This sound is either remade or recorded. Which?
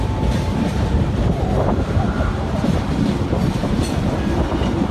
remade